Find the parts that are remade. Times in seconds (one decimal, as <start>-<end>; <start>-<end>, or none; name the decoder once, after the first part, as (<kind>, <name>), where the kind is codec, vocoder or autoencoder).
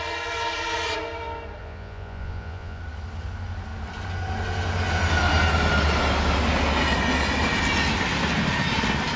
1.6-2.8 (vocoder, Vocos)